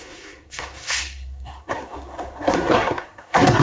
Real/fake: fake